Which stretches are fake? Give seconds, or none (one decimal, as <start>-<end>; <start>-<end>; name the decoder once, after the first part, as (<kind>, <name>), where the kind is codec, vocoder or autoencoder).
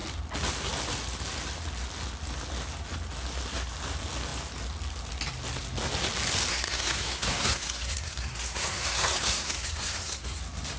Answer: 6.5-10.4 (codec, SNAC)